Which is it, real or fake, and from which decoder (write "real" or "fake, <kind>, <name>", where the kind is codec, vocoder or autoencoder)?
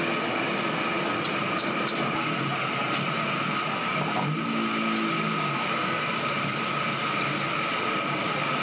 real